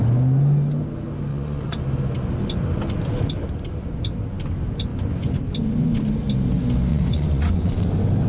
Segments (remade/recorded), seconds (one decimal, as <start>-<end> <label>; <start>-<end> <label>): 0.0-1.3 recorded; 1.3-1.8 remade; 1.8-4.9 recorded; 4.9-5.4 remade; 5.4-6.9 recorded; 6.9-7.9 remade; 7.9-8.3 recorded